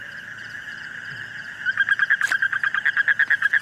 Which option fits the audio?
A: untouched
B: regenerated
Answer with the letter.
A